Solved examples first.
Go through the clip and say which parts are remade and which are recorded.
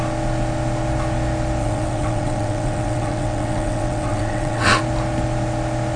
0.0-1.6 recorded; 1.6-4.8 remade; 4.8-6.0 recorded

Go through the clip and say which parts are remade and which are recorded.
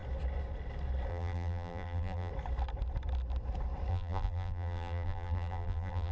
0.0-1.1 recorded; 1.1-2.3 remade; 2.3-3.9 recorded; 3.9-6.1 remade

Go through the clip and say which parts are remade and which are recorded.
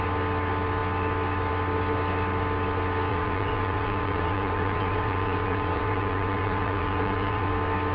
0.0-3.1 recorded; 3.1-7.5 remade; 7.5-7.9 recorded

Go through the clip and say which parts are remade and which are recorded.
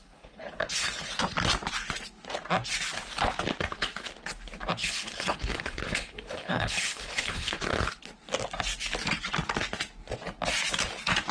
0.0-1.1 remade; 1.1-4.8 recorded; 4.8-7.6 remade; 7.6-11.3 recorded